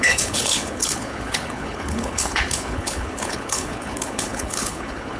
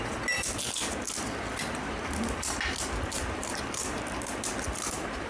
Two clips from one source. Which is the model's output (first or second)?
first